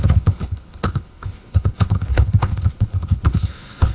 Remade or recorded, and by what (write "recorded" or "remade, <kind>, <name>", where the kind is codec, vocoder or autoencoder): remade, codec, HILCodec